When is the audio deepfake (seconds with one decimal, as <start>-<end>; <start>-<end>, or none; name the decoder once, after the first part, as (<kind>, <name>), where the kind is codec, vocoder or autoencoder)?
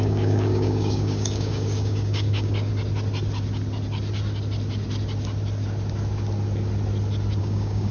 0.0-2.7 (codec, DAC); 7.4-7.9